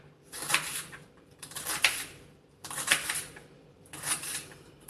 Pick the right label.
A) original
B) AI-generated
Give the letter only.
B